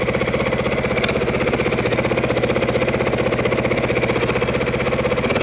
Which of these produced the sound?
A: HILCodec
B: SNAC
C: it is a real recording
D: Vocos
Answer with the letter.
C